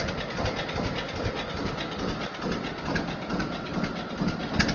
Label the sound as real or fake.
real